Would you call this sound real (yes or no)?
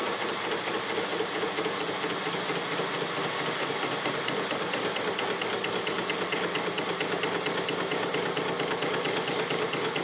yes